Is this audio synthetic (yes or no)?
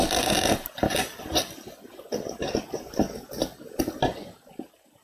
no